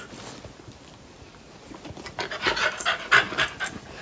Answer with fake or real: real